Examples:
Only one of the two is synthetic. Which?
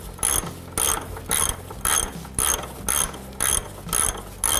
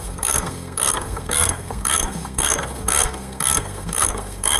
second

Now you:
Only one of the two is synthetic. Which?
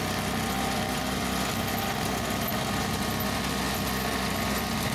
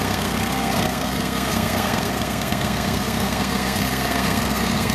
second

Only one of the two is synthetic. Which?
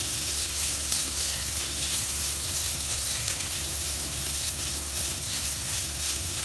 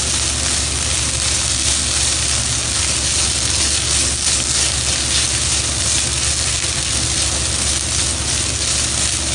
first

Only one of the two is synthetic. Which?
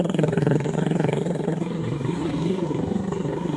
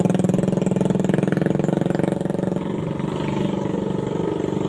first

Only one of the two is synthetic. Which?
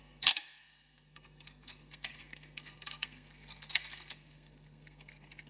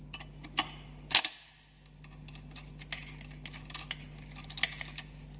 first